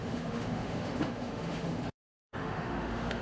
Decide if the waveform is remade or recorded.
remade